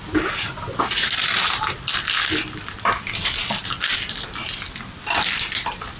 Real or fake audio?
real